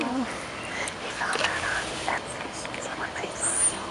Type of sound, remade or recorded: recorded